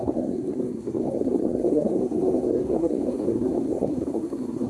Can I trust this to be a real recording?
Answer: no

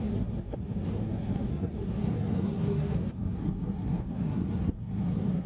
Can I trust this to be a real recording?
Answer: no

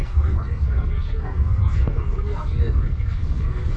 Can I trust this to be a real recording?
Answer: no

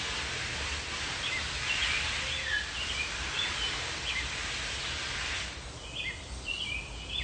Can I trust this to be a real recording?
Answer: yes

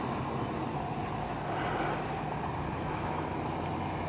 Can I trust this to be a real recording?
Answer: yes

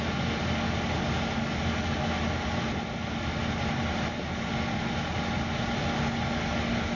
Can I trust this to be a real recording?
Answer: yes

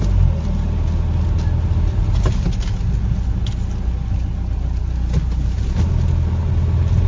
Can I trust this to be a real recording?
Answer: yes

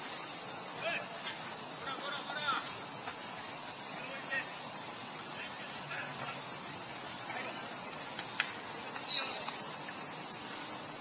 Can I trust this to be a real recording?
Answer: yes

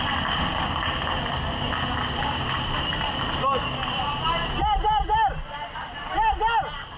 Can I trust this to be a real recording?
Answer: yes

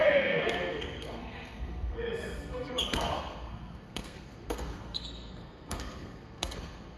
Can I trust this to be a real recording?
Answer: no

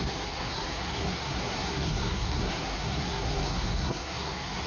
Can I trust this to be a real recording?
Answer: no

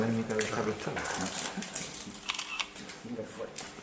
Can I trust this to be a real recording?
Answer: yes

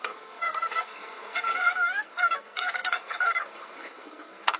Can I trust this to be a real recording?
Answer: no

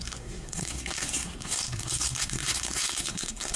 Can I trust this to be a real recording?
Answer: no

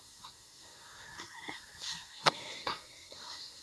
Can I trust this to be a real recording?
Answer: no